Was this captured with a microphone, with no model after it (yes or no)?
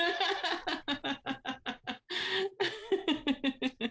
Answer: yes